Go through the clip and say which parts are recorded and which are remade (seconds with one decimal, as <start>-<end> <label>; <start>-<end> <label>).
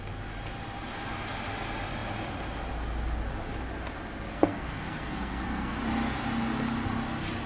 0.0-4.3 recorded; 4.3-5.8 remade; 5.8-7.5 recorded